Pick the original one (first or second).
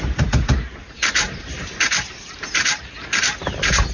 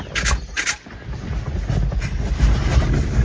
second